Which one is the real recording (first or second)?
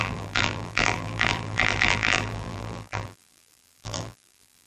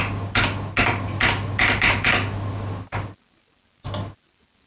second